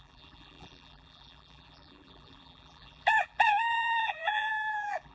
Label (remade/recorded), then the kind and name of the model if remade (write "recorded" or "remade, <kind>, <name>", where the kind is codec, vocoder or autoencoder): remade, vocoder, BigVGAN v2